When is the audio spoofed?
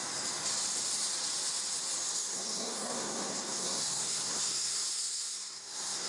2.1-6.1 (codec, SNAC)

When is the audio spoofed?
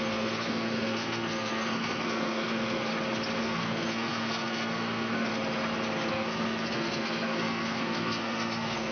0.0-2.9 (codec, SNAC); 3.4-5.3; 6.1-8.9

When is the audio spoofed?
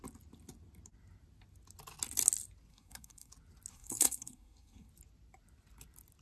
2.7-3.3 (codec, SNAC); 3.7-4.9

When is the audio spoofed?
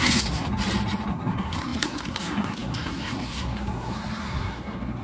0.0-0.5 (codec, SNAC); 1.1-5.0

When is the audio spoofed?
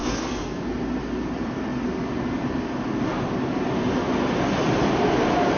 0.0-0.6 (codec, SNAC)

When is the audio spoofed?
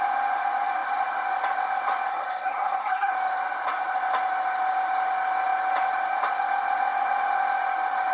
2.1-3.1 (codec, SNAC)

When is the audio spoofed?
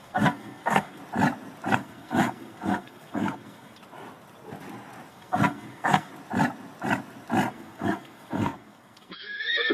0.0-1.0 (codec, SNAC); 1.7-3.8; 5.1-6.1; 7.5-9.7